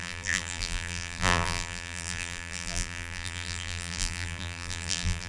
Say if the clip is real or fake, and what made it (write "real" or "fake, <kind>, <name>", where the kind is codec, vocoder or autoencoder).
fake, vocoder, BigVGAN v2